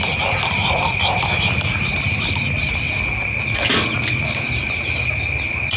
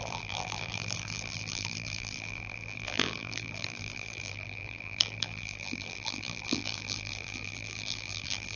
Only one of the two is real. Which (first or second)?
first